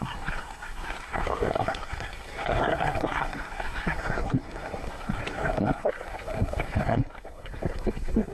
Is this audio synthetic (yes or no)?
yes